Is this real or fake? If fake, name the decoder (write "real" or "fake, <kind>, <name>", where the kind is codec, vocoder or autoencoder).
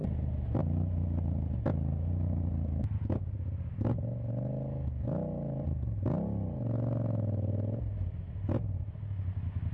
real